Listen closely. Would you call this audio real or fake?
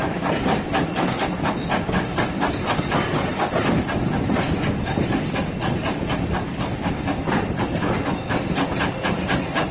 real